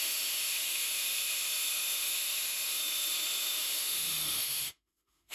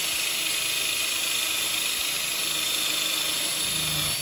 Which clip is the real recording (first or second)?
second